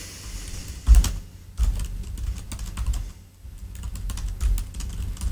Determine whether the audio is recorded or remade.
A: recorded